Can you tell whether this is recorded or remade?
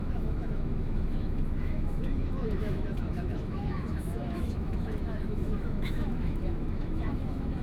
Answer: remade